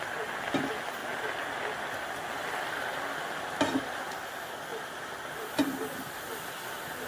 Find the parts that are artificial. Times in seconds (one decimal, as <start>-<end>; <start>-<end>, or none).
none